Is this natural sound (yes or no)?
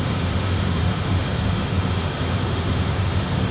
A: no